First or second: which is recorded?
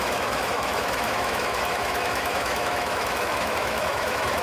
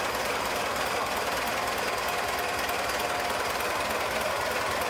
second